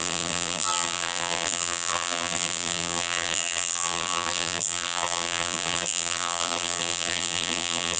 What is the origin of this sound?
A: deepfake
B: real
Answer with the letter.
A